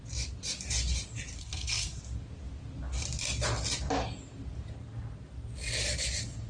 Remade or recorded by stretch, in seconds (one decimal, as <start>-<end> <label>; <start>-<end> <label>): 0.0-1.4 recorded; 1.4-2.0 remade; 2.0-6.5 recorded